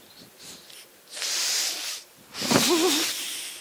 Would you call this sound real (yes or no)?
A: yes